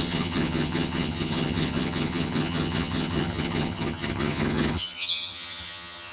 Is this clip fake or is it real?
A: fake